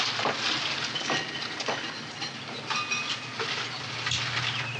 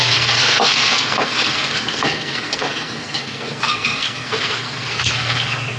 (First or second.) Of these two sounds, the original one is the first